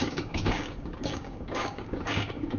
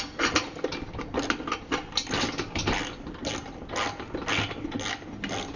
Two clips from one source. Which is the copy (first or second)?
first